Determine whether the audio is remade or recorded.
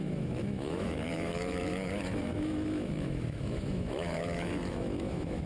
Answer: remade